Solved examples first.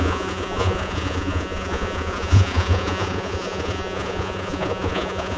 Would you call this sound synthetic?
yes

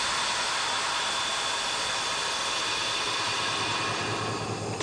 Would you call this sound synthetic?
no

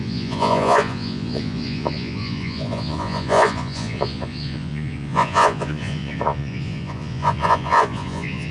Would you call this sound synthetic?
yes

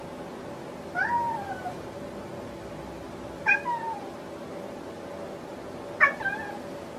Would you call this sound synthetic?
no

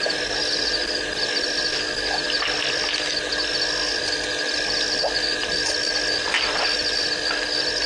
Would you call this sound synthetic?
no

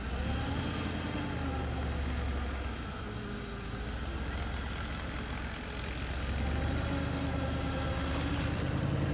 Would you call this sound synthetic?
no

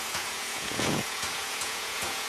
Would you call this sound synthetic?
yes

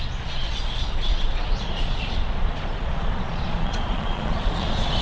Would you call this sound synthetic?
yes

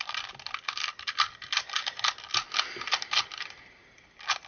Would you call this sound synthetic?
no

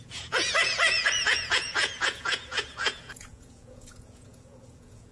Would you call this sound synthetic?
yes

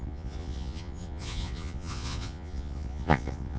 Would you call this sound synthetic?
yes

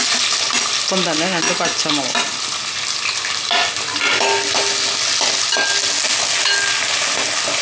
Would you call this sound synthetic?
no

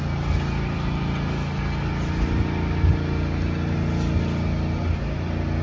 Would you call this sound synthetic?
no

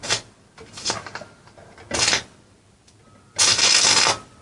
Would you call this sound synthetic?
no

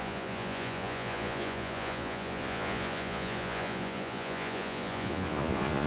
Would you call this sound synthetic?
yes